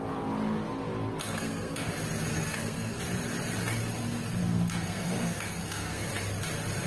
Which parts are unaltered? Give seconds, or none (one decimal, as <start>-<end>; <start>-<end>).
0.0-1.2; 1.9-2.3; 3.0-4.4; 6.1-6.9